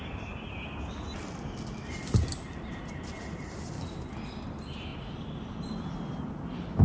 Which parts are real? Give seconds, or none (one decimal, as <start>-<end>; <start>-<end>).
0.0-6.8